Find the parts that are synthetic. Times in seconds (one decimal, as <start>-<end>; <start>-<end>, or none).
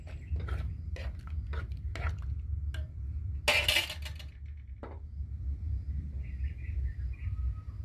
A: none